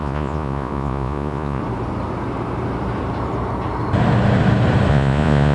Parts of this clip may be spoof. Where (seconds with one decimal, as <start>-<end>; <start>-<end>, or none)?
0.0-1.6; 4.9-5.5